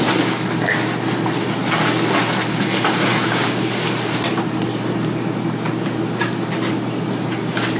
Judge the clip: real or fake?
real